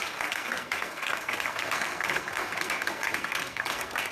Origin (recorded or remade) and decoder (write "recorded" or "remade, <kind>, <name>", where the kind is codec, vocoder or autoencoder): remade, codec, SNAC